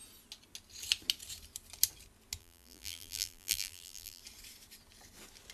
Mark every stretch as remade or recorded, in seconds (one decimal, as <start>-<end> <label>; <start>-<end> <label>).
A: 0.0-2.4 recorded; 2.4-4.2 remade; 4.2-5.5 recorded